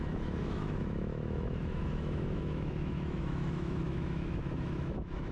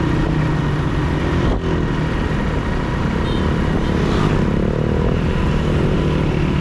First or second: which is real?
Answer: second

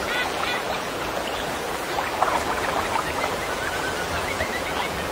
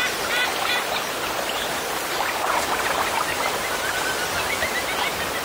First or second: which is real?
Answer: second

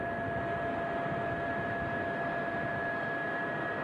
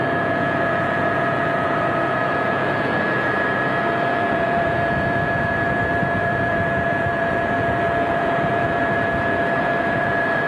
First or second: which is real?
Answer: first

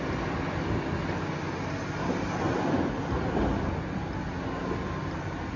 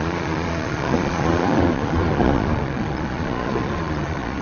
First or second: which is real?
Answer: first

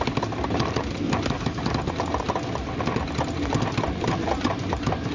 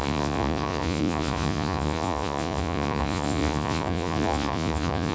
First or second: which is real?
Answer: first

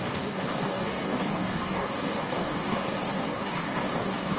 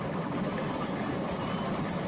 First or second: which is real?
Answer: second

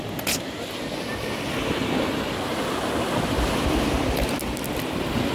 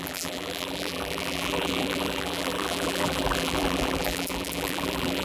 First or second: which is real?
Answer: first